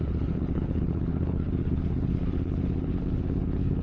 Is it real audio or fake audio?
fake